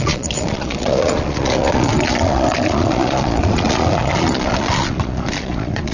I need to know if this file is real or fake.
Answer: fake